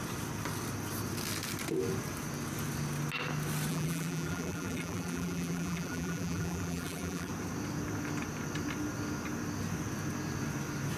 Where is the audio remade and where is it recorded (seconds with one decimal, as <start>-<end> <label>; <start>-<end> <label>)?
0.0-3.7 recorded; 3.7-7.3 remade; 7.3-11.0 recorded